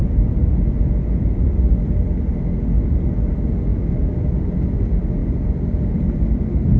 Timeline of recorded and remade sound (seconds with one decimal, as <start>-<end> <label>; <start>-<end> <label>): 0.0-3.7 recorded; 3.7-4.3 remade; 4.3-6.8 recorded